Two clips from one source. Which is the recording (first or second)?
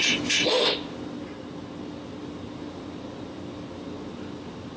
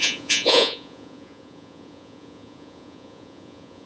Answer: first